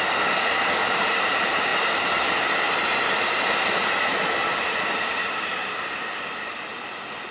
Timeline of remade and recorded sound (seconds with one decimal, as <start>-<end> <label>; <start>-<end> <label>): 0.0-7.3 recorded